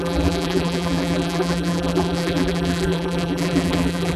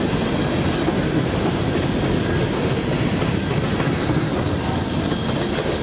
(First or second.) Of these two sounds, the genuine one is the second